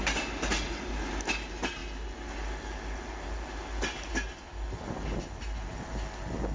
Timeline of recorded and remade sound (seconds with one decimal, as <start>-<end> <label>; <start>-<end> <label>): 0.0-6.5 recorded